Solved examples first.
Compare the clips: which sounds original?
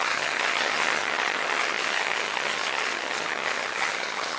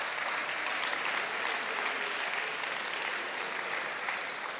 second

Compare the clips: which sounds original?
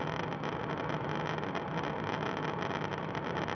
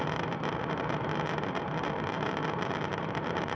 first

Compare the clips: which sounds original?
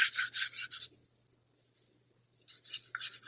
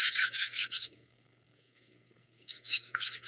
first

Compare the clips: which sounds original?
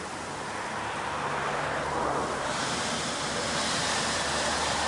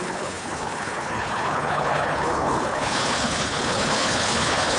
first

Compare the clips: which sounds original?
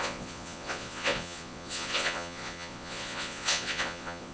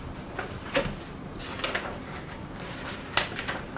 second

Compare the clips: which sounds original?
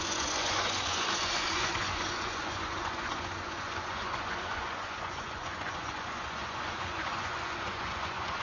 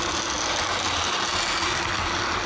second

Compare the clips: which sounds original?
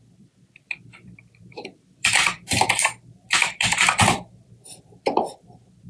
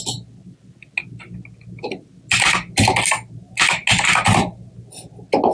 second